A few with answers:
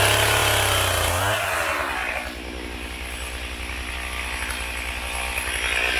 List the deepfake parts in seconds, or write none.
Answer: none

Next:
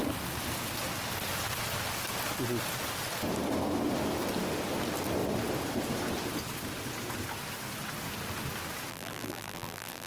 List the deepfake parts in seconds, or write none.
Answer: 8.9-10.1 (vocoder, BigVGAN v2)

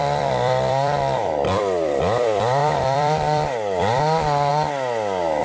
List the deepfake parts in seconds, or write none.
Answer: 0.0-4.5 (vocoder, BigVGAN v2)